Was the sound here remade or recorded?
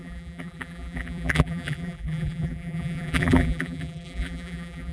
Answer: remade